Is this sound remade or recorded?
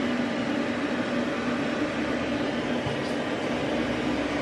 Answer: recorded